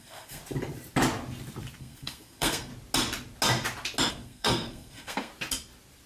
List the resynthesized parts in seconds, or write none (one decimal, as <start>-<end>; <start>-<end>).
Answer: 0.0-0.4; 1.8-2.7; 4.1-5.3